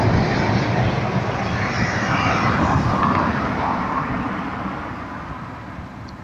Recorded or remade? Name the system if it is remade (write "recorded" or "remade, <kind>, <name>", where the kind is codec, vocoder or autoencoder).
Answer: recorded